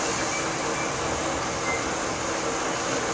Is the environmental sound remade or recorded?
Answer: recorded